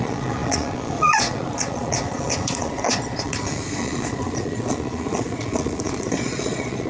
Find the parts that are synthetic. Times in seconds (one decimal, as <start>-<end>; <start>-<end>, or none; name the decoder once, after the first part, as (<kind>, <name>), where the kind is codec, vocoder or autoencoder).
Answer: 0.0-6.9 (vocoder, Vocos)

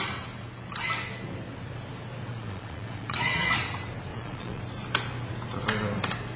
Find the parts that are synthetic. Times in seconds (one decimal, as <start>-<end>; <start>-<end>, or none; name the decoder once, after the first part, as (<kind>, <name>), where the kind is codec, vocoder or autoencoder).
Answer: 2.3-3.6 (vocoder, Vocos); 4.1-4.6

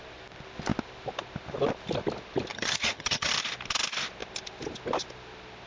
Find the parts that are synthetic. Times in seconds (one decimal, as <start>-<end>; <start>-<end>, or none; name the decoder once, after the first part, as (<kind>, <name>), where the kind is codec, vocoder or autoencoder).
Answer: 2.5-3.3 (vocoder, HiFi-GAN)

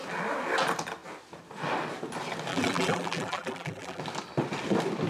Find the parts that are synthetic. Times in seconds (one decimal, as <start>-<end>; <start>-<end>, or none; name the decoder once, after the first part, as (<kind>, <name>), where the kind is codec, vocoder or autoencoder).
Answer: 2.5-4.0 (vocoder, BigVGAN v2)

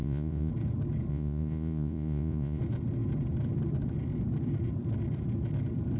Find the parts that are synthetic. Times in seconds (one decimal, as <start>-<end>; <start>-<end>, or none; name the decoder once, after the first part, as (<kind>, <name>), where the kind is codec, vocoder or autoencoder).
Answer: 0.0-0.5 (vocoder, Vocos); 1.1-2.6

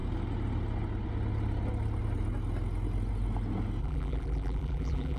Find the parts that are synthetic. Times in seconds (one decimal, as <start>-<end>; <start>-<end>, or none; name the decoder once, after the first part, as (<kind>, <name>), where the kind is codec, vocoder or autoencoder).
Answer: 3.8-5.2 (vocoder, BigVGAN v2)